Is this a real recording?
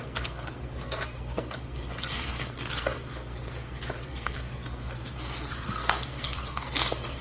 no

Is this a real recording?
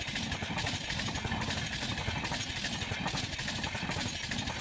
yes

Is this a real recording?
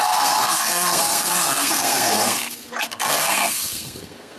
no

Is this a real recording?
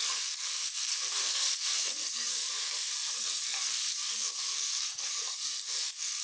no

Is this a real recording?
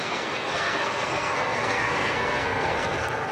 no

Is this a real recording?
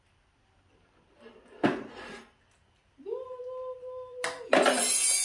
yes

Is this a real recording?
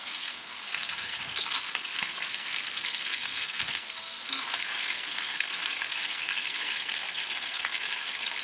no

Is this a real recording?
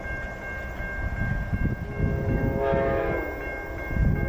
yes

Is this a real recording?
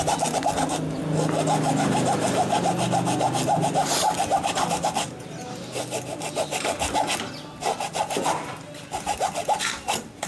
yes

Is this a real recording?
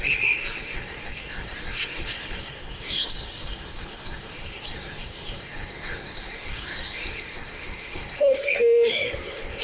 no